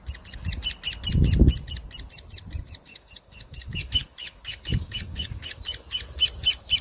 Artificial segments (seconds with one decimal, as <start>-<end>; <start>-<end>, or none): 2.9-5.6